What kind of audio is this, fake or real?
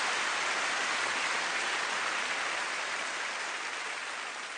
real